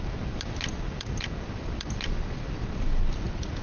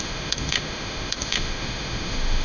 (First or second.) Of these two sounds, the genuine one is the first